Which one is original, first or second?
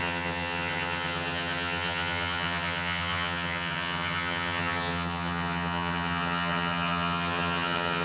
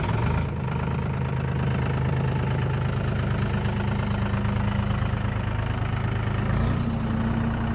second